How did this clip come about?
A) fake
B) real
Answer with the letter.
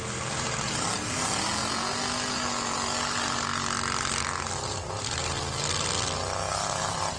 B